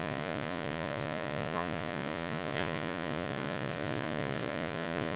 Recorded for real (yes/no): no